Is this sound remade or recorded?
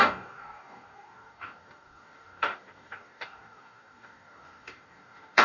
remade